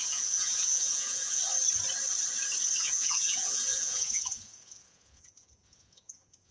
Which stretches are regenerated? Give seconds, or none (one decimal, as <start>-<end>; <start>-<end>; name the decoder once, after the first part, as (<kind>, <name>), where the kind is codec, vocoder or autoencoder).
0.0-1.4 (vocoder, Vocos); 2.8-6.5